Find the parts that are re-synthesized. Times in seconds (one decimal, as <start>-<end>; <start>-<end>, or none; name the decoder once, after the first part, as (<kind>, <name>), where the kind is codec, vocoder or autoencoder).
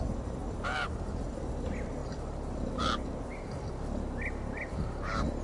none